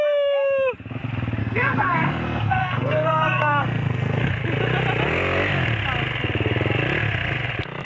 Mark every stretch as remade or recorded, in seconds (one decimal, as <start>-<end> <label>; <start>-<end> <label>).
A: 0.0-1.4 recorded; 1.4-4.3 remade; 4.3-7.8 recorded